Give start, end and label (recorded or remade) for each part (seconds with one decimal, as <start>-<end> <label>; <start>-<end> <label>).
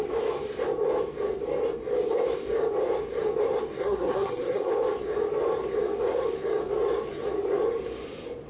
0.0-3.8 recorded; 3.8-4.7 remade; 4.7-8.5 recorded